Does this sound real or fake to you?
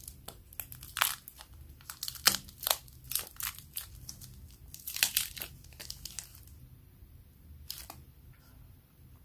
real